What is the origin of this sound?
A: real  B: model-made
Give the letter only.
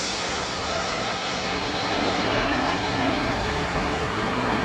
B